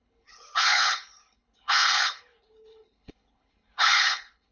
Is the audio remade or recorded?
remade